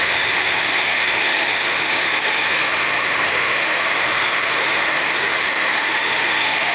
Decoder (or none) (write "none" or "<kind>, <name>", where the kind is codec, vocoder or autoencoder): autoencoder, DAC-VAE